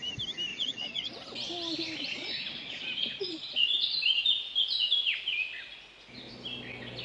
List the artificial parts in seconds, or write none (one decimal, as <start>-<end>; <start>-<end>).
0.5-1.1; 2.0-4.0